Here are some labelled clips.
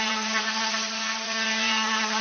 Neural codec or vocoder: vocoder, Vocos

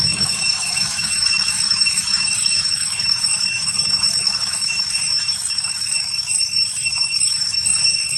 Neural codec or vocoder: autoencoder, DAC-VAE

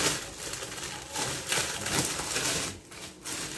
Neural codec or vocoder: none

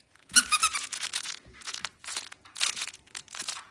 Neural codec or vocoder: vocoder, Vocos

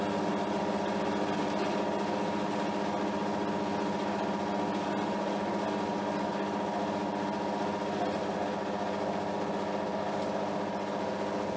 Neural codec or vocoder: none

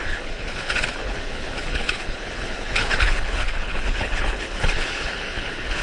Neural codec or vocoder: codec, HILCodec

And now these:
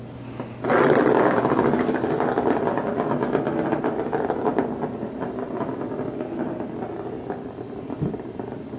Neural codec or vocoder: none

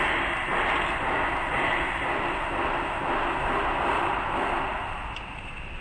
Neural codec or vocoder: none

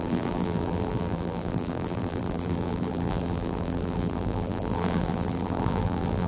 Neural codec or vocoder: vocoder, BigVGAN v2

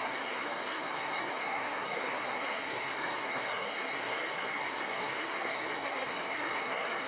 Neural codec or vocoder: codec, SNAC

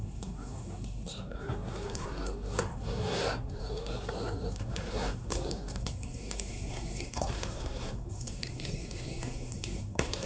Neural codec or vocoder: codec, SNAC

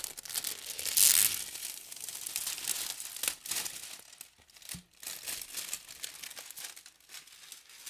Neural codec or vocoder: none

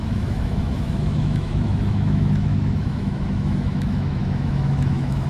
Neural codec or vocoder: autoencoder, DAC-VAE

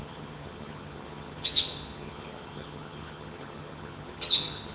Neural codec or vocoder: vocoder, HiFi-GAN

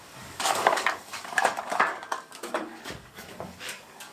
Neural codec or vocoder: codec, DAC